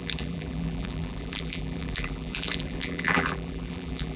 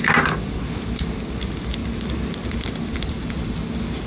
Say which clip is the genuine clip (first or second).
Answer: second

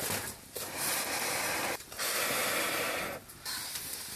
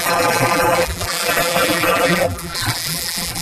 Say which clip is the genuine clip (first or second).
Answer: first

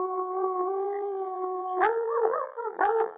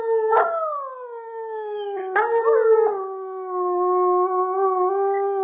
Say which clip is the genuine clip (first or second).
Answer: second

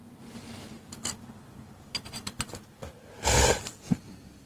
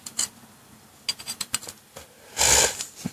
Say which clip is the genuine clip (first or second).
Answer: second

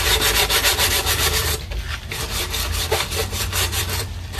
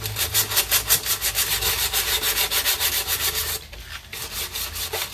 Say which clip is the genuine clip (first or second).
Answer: second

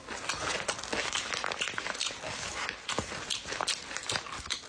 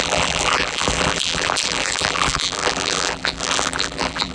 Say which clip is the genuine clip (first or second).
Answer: first